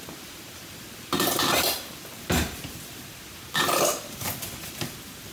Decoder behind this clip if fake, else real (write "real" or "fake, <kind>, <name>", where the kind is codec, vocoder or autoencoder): fake, vocoder, BigVGAN v2